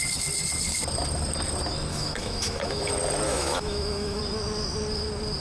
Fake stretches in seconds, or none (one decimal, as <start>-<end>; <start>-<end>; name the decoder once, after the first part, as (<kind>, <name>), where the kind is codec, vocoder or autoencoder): 1.9-2.9 (autoencoder, DAC-VAE); 3.3-4.2